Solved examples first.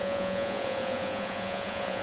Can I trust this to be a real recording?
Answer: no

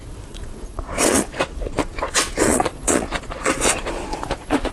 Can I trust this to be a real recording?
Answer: no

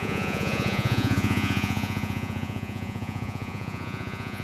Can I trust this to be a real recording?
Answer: no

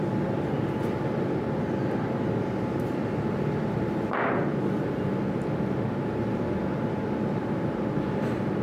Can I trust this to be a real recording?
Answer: yes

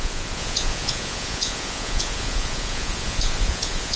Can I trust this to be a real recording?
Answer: no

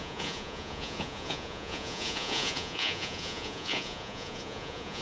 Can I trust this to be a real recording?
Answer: no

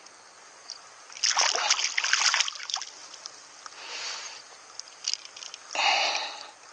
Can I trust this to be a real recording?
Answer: yes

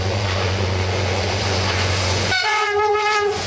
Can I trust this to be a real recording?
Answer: no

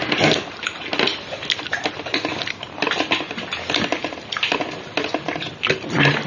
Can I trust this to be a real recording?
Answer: yes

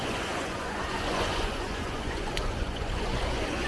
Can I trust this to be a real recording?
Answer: no